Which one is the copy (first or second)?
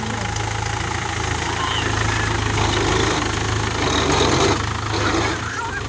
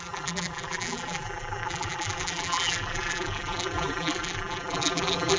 second